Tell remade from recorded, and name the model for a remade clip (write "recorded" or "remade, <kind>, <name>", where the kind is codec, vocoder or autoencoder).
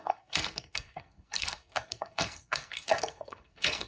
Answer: remade, codec, SNAC